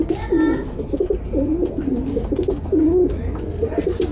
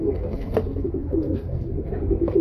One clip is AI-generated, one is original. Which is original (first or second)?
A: first